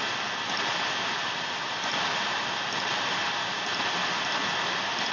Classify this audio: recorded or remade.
recorded